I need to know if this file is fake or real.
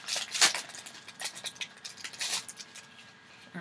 real